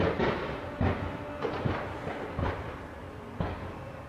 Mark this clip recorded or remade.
recorded